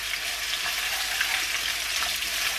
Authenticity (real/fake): real